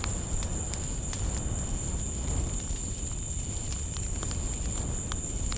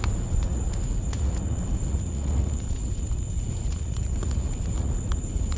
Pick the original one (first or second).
first